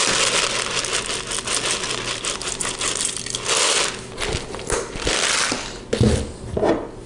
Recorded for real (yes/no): yes